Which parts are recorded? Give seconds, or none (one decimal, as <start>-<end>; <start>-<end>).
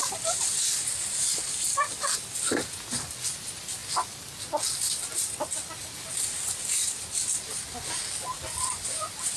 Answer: 0.0-9.4